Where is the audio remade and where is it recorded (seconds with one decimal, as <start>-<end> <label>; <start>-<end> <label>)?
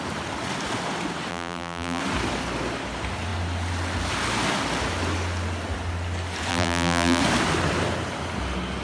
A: 0.0-1.3 recorded; 1.3-2.0 remade; 2.0-6.5 recorded; 6.5-7.2 remade; 7.2-8.8 recorded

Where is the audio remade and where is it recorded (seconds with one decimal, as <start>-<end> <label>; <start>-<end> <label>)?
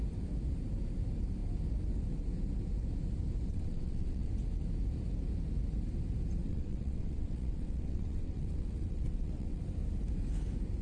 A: 0.0-3.5 recorded; 3.5-4.3 remade; 4.3-6.4 recorded; 6.4-9.6 remade; 9.6-10.8 recorded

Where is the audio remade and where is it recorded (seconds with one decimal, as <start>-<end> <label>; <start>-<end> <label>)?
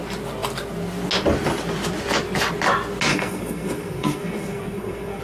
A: 0.0-3.1 recorded; 3.1-5.2 remade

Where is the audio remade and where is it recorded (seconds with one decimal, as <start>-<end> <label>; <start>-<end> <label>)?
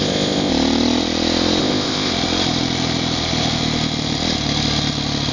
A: 0.0-0.5 remade; 0.5-1.6 recorded; 1.6-2.1 remade; 2.1-5.3 recorded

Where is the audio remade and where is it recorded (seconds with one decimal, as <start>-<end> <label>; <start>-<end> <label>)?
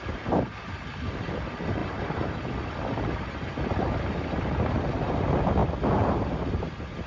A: 0.0-7.1 recorded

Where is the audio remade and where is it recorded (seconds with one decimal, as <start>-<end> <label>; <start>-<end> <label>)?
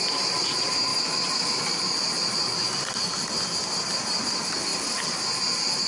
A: 0.0-0.9 recorded; 0.9-1.7 remade; 1.7-4.7 recorded; 4.7-5.9 remade